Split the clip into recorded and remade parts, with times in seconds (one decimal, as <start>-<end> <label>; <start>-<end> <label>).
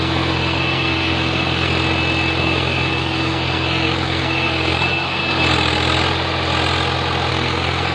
0.0-1.7 remade; 1.7-2.4 recorded; 2.4-5.2 remade; 5.2-7.3 recorded; 7.3-7.9 remade